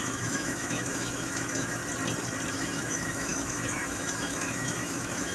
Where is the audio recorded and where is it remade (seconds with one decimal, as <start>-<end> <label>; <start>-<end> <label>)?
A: 0.0-1.8 remade; 1.8-2.5 recorded; 2.5-5.3 remade